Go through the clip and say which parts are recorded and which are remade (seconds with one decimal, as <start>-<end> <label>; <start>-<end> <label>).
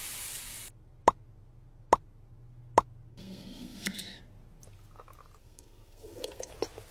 0.0-3.1 recorded; 3.1-4.2 remade; 4.2-5.4 recorded; 5.4-6.5 remade; 6.5-6.9 recorded